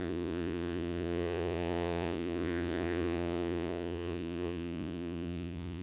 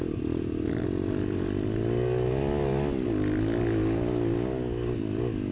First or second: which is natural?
second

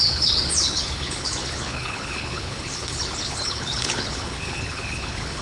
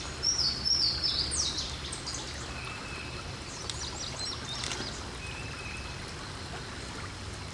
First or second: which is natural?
second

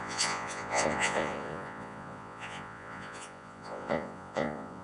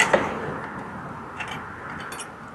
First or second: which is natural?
second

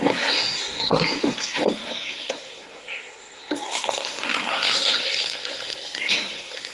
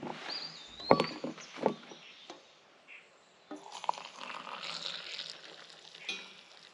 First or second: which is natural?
second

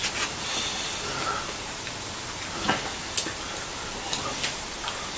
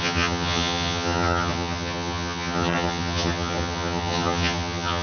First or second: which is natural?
first